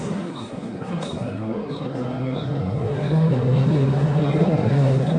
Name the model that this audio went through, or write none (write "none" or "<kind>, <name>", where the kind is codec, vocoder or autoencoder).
codec, SNAC